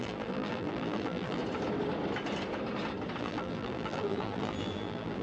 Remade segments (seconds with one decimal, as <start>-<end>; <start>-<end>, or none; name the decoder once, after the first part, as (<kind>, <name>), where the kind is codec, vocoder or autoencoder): 0.0-1.4 (vocoder, BigVGAN v2); 3.2-5.2